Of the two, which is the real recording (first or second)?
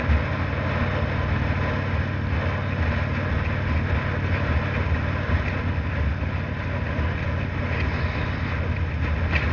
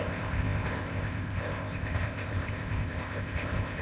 first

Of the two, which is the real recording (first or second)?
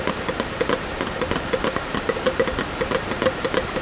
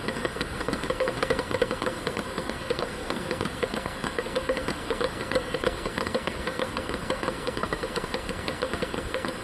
first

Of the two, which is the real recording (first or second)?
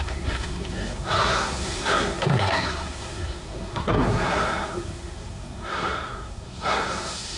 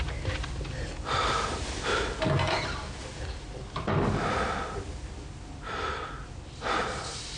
second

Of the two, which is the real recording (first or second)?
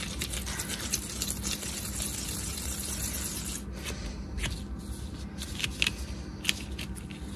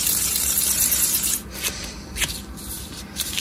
first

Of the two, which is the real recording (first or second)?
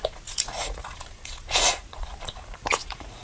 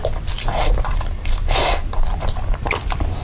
second